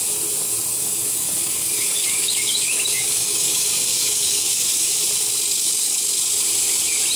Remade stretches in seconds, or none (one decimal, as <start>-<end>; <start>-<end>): 0.7-4.9; 5.5-6.1